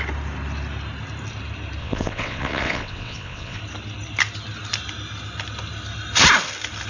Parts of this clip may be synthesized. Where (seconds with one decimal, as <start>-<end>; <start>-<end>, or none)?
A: 1.8-3.6